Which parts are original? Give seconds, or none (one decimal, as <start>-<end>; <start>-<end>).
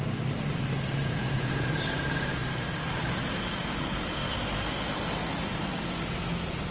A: 0.0-1.0; 1.7-6.7